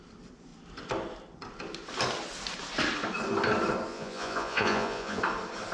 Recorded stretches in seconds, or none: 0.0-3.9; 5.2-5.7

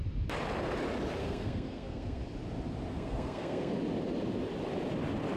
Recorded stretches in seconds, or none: 0.0-1.2; 2.2-2.9; 3.7-5.4

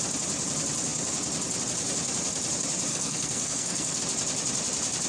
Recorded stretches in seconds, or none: 0.0-2.9; 4.0-5.1

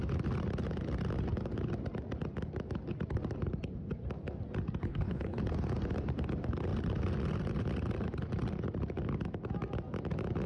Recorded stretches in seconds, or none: 0.0-4.8; 5.4-10.5

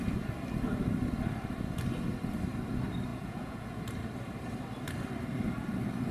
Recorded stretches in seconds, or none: 0.0-3.1; 3.8-6.1